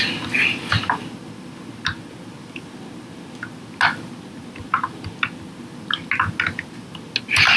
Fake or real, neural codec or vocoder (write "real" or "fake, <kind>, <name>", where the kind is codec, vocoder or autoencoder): real